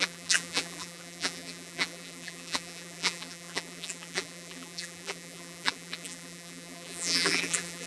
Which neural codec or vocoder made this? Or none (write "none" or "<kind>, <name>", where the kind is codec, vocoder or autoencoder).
vocoder, BigVGAN v2